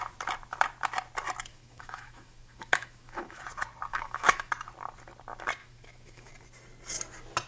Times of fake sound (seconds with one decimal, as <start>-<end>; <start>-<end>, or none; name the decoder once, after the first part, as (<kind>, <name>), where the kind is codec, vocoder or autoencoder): 1.5-3.4 (autoencoder, DAC-VAE); 3.9-4.5; 5.6-6.3